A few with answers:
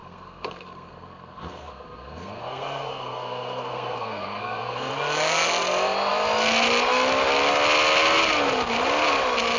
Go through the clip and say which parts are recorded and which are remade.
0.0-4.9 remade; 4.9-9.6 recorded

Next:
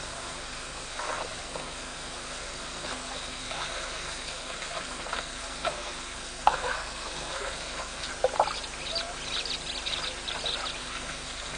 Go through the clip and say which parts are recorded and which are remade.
0.0-8.1 remade; 8.1-10.8 recorded; 10.8-11.6 remade

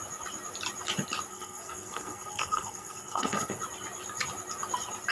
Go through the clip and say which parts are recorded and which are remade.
0.0-1.3 recorded; 1.3-3.6 remade; 3.6-5.1 recorded

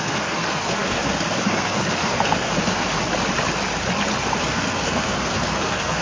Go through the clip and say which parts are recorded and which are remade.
0.0-3.0 remade; 3.0-4.4 recorded; 4.4-6.0 remade

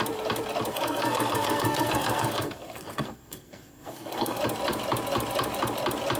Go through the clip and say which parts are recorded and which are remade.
0.0-0.7 recorded; 0.7-4.4 remade; 4.4-6.2 recorded

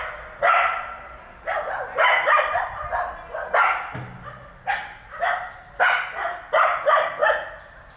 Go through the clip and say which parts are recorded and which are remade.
0.0-8.0 recorded

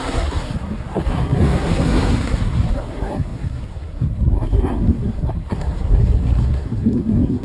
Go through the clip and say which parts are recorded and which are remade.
0.0-7.4 remade

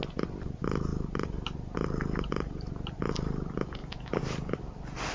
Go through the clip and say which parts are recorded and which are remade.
0.0-5.1 recorded